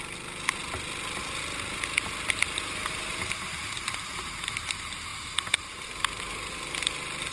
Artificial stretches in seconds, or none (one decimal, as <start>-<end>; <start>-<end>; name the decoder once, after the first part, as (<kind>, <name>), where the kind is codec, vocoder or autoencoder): none